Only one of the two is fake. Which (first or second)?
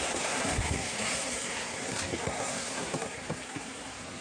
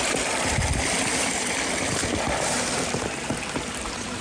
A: first